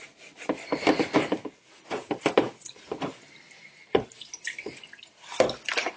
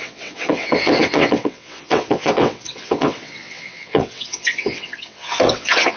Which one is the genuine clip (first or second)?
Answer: first